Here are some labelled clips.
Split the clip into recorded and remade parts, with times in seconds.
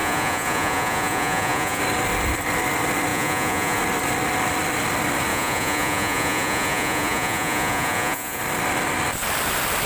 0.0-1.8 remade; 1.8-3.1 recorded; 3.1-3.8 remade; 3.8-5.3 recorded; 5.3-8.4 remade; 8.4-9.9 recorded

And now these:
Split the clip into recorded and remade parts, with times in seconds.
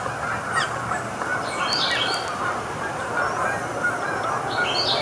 0.0-5.0 recorded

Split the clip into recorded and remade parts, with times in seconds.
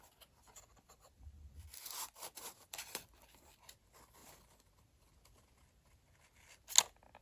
0.0-0.7 recorded; 0.7-3.7 remade; 3.7-4.2 recorded; 4.2-5.0 remade; 5.0-7.2 recorded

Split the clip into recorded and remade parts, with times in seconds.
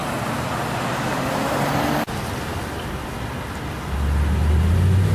0.0-5.1 recorded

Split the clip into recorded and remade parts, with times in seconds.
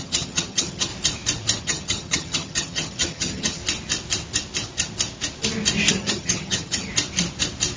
0.0-0.9 remade; 0.9-1.6 recorded; 1.6-3.6 remade; 3.6-5.9 recorded; 5.9-6.9 remade; 6.9-7.8 recorded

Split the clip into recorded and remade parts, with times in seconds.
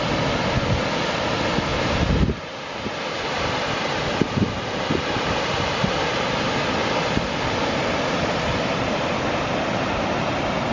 0.0-1.7 recorded; 1.7-4.3 remade; 4.3-10.7 recorded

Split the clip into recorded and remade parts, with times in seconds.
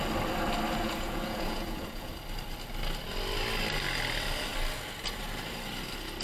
0.0-0.8 recorded; 0.8-2.1 remade; 2.1-6.2 recorded